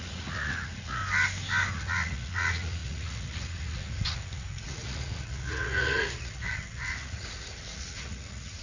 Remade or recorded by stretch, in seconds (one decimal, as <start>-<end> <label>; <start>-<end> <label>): 0.0-1.0 remade; 1.0-1.7 recorded; 1.7-8.6 remade